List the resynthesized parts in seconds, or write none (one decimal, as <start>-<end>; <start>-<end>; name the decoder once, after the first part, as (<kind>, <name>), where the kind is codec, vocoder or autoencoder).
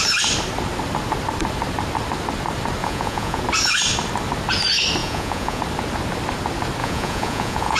2.8-3.4 (vocoder, Vocos); 5.0-5.6; 6.8-7.8